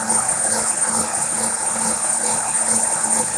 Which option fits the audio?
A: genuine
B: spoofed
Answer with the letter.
B